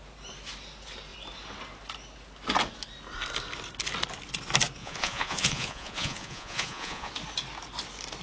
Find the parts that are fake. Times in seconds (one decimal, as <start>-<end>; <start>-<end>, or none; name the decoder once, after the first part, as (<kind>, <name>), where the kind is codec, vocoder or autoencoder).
4.8-7.1 (vocoder, Vocos)